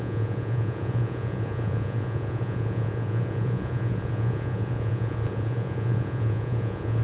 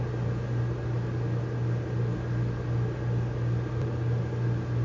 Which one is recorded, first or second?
second